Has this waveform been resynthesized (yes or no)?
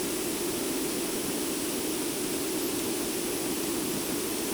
no